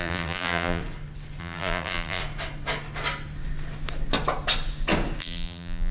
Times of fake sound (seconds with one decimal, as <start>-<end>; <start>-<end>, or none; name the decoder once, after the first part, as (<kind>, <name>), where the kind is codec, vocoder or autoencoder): 0.0-0.8 (vocoder, BigVGAN v2); 1.4-2.2; 5.2-5.9